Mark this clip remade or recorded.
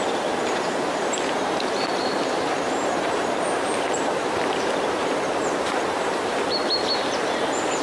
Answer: remade